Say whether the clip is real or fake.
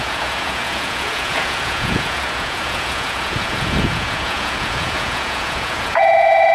fake